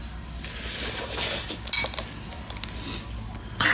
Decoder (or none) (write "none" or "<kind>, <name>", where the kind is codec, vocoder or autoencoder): none